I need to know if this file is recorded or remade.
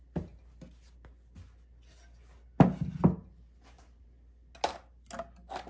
recorded